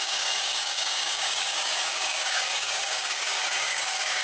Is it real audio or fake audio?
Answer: fake